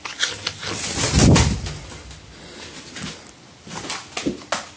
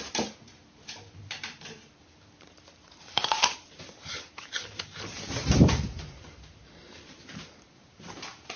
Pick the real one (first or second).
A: first